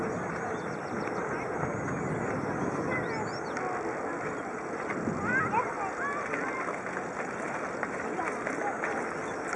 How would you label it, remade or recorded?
recorded